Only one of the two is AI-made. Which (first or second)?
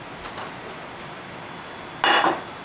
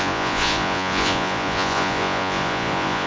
second